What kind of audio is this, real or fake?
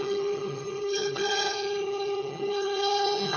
fake